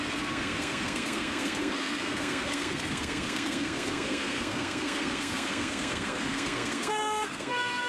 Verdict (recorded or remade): remade